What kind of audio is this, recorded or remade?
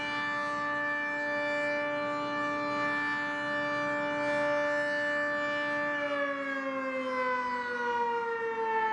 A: recorded